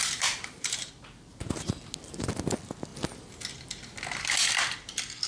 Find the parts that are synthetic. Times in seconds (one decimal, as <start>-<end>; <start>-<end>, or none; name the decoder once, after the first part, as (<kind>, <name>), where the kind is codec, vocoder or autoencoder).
0.0-0.9 (vocoder, BigVGAN v2)